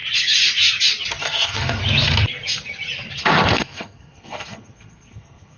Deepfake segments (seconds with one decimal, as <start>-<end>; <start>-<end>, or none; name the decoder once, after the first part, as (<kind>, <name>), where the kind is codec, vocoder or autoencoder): 1.2-1.8 (codec, SNAC); 3.2-5.6